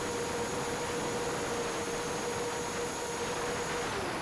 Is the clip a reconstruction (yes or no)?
no